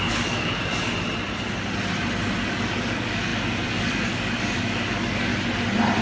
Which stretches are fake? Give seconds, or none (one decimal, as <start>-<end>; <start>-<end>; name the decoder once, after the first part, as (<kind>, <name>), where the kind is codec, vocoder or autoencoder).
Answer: 0.0-0.7 (codec, DAC); 2.5-5.3